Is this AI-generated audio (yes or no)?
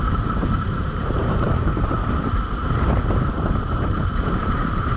yes